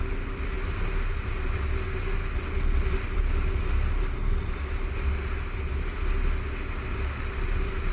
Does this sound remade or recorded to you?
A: recorded